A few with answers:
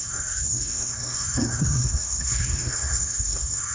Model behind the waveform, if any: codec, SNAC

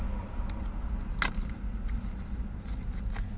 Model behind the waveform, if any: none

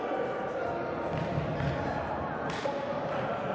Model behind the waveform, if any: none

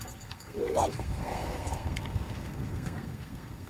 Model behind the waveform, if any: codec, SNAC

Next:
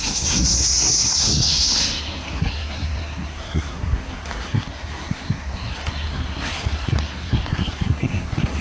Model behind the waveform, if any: codec, SNAC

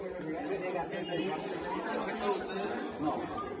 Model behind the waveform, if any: none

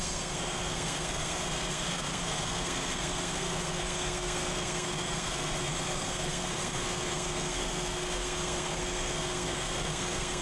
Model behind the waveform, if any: codec, SNAC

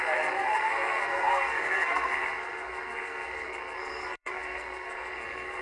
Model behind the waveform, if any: codec, SNAC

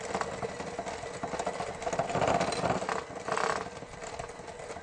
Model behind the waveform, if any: none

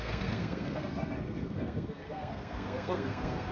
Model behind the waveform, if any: codec, SNAC